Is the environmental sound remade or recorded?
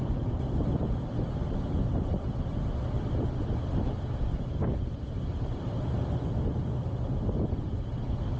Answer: recorded